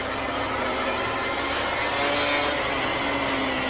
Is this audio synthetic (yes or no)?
no